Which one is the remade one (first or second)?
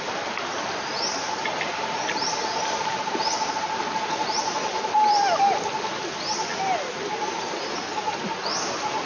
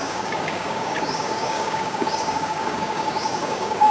second